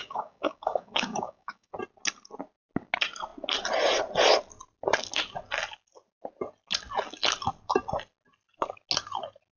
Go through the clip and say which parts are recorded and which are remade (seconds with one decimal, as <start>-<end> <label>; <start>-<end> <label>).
0.0-1.7 remade; 1.7-9.6 recorded